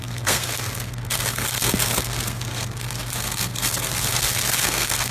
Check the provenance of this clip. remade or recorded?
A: remade